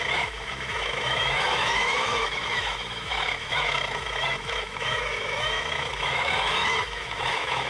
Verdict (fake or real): fake